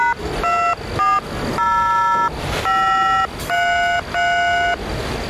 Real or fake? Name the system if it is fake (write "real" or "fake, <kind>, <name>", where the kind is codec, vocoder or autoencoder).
real